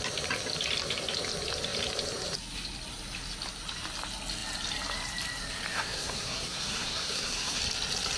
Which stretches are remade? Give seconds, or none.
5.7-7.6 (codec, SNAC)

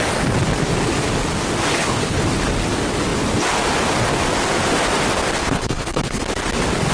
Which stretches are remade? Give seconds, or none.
1.7-2.2 (codec, HILCodec); 5.4-6.2

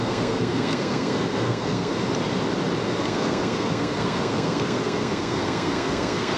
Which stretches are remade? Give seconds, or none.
0.0-1.9 (codec, SNAC); 3.0-6.4